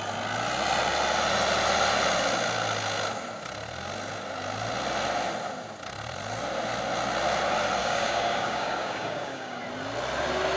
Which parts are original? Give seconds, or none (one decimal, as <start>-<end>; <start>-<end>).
0.0-7.8; 9.6-10.6